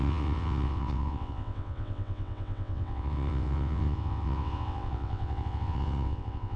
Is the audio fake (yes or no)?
yes